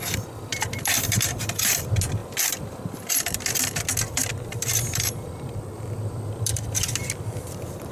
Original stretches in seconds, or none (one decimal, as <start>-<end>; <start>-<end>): 0.0-0.5; 1.6-2.2; 6.9-7.9